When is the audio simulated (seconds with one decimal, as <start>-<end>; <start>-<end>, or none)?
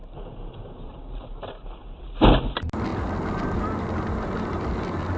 0.0-1.0; 1.8-2.3